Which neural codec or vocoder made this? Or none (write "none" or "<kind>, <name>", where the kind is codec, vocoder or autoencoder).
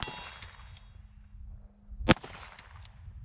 none